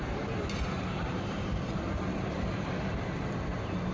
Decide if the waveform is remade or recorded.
recorded